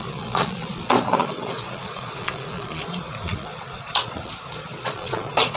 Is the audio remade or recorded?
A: remade